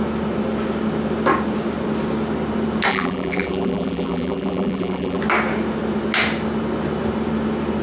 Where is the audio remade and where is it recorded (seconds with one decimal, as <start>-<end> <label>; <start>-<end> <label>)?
0.0-2.9 recorded; 2.9-5.2 remade; 5.2-7.8 recorded